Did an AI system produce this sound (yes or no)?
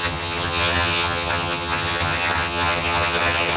yes